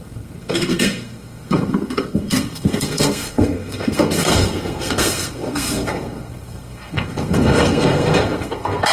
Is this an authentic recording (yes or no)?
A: no